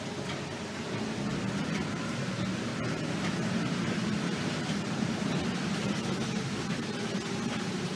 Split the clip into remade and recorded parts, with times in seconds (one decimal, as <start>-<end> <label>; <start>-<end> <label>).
0.0-8.0 recorded